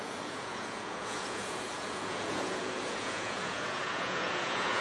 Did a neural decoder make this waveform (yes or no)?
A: yes